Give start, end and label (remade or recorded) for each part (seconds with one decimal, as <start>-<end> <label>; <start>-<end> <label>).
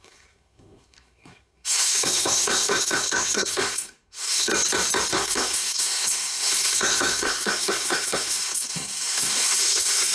0.0-4.5 remade; 4.5-5.1 recorded; 5.1-10.1 remade